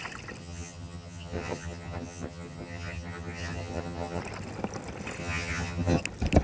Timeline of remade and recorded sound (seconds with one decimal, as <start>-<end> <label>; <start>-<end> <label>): 0.0-0.4 recorded; 0.4-4.2 remade; 4.2-5.2 recorded; 5.2-6.0 remade; 6.0-6.4 recorded